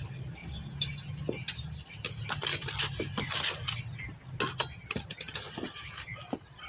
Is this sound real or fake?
real